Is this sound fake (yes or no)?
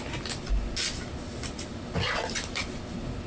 no